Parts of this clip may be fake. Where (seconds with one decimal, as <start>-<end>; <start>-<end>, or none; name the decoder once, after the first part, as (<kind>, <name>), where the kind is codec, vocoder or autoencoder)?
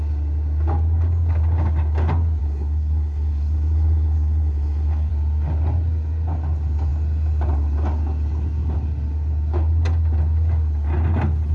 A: 2.4-5.1 (codec, SNAC)